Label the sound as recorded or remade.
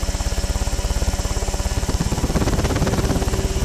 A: recorded